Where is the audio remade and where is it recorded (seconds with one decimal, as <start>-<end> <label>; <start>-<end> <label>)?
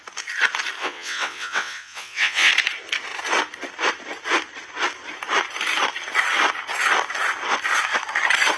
0.0-0.8 recorded; 0.8-2.5 remade; 2.5-8.6 recorded